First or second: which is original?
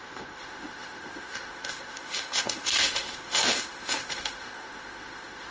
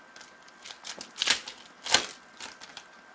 second